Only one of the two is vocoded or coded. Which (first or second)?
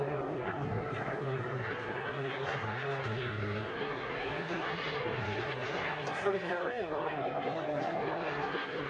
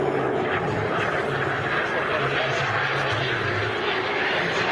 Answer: first